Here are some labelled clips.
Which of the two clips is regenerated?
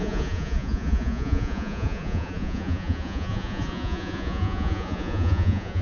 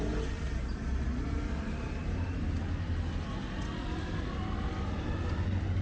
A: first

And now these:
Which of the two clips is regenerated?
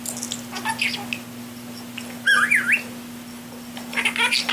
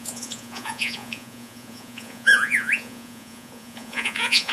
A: second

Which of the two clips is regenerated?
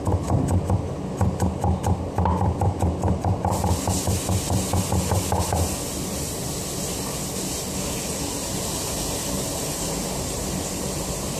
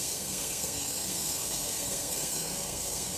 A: second